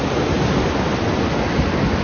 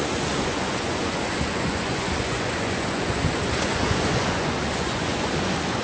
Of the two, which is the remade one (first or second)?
second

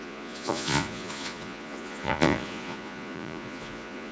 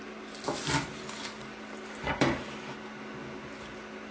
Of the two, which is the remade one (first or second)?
first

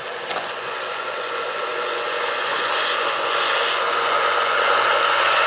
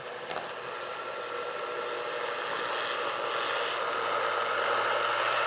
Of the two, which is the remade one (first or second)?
first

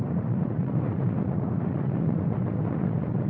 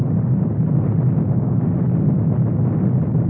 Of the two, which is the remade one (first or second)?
first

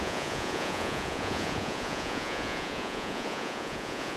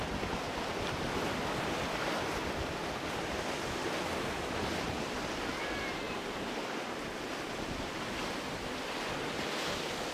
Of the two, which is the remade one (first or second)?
first